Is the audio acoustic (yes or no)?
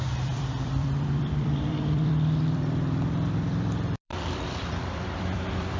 no